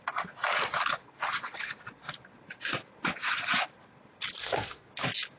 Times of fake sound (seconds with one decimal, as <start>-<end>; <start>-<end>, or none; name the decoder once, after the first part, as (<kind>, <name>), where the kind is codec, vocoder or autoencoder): 4.4-4.9 (autoencoder, DAC-VAE)